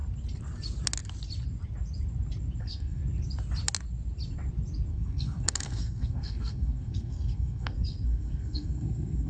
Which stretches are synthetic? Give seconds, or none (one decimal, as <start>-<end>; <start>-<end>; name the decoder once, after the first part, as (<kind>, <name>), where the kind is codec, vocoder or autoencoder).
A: 2.6-3.0 (codec, SNAC); 4.9-9.3